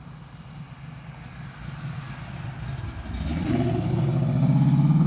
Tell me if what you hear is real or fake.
real